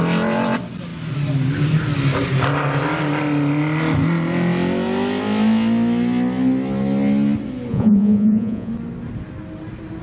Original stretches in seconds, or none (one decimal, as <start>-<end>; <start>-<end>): 0.0-7.7; 8.7-10.0